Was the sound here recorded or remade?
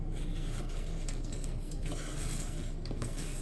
remade